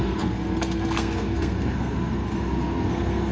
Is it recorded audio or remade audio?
remade